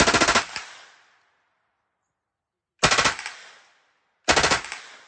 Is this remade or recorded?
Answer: recorded